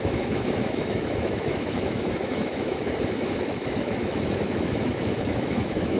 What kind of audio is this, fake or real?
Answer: fake